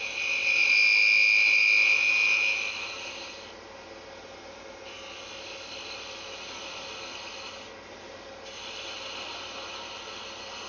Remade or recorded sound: recorded